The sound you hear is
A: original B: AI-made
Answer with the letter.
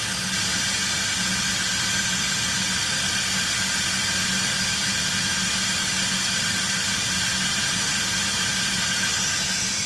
A